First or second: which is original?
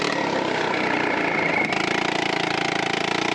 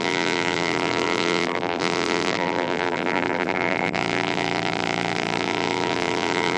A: first